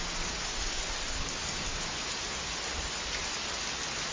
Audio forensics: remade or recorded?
recorded